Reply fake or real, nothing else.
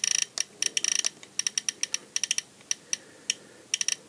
real